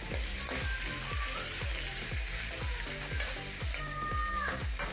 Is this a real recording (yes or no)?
yes